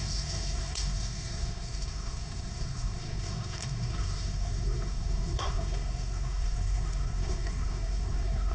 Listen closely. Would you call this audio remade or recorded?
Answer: remade